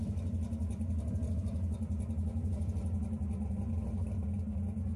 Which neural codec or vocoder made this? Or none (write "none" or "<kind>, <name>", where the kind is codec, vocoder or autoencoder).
none